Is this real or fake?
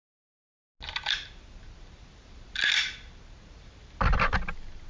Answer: real